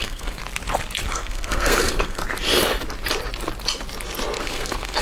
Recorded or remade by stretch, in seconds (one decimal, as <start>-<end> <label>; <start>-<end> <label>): 0.0-0.4 remade; 0.4-1.1 recorded; 1.1-2.2 remade; 2.2-4.4 recorded; 4.4-5.0 remade

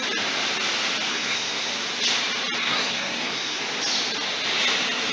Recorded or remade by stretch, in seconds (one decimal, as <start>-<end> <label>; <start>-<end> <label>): 0.0-1.1 recorded; 1.1-1.7 remade; 1.7-2.6 recorded; 2.6-3.6 remade; 3.6-5.1 recorded